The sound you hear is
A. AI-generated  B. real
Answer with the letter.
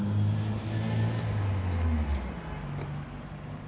B